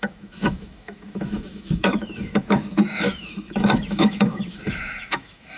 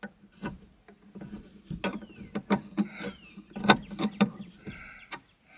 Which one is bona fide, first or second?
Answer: second